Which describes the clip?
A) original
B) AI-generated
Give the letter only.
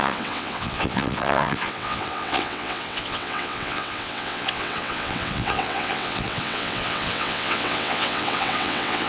B